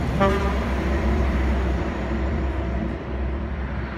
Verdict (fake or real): fake